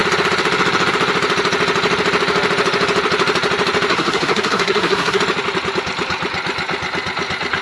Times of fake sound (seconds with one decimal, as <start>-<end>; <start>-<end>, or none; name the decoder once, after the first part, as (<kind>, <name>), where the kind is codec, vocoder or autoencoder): 3.9-5.2 (codec, SNAC)